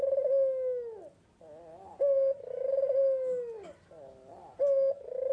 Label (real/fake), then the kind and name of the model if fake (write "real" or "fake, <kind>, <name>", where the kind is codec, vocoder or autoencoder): real